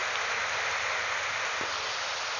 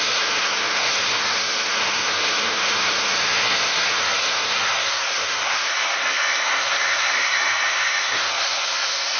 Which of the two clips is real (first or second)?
first